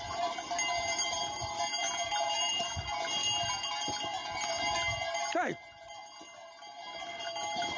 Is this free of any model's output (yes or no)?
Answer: yes